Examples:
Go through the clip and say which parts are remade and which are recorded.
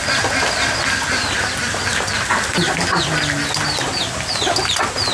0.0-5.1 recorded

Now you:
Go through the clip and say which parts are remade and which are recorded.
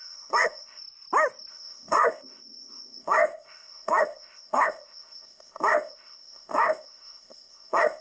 0.0-0.8 remade; 0.8-1.5 recorded; 1.5-8.0 remade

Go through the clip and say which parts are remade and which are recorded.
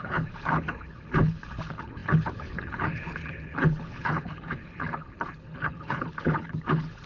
0.0-7.1 remade